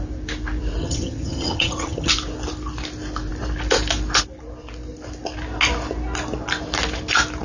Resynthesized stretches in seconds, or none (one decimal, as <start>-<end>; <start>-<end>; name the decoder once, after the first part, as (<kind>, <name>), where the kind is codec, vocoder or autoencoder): 0.8-2.1 (vocoder, HiFi-GAN)